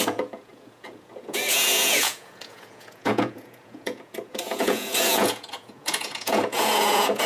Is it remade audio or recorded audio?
remade